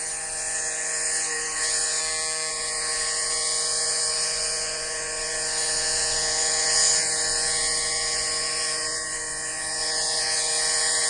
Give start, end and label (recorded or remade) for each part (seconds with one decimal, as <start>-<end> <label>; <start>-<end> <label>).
0.0-2.0 remade; 2.0-2.5 recorded; 2.5-11.1 remade